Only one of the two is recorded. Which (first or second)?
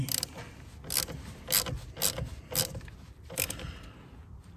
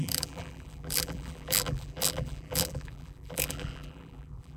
first